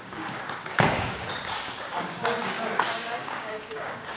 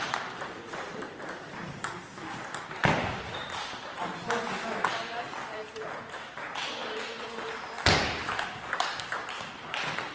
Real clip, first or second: second